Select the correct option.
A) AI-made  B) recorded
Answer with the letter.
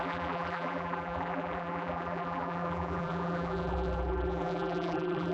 A